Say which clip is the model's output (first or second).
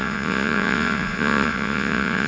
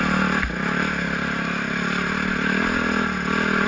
first